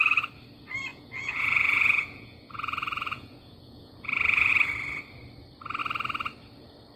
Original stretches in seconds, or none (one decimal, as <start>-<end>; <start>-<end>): 0.0-0.9; 4.5-7.0